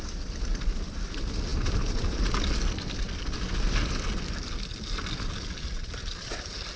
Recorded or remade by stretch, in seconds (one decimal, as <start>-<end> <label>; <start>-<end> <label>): 0.0-6.8 recorded